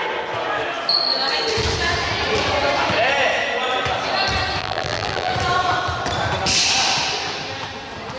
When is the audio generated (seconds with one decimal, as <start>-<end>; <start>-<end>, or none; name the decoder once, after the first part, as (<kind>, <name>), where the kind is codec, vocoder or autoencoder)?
4.6-5.3 (vocoder, BigVGAN v2)